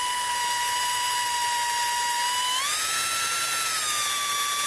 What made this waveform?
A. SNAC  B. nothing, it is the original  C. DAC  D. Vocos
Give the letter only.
B